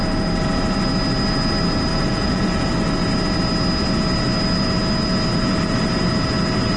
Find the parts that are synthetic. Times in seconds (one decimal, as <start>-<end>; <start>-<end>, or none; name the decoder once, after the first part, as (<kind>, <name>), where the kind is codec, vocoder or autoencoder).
1.9-2.7 (vocoder, Vocos)